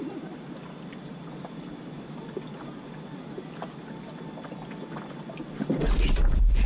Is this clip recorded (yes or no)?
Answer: yes